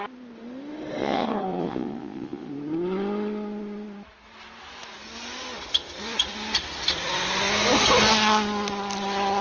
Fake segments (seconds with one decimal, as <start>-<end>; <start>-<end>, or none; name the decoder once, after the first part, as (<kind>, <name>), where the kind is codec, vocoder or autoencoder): 1.0-2.5 (vocoder, Vocos)